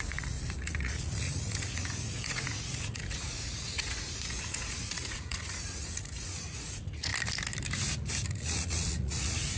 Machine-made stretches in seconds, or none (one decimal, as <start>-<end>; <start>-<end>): 0.0-7.1; 8.3-9.6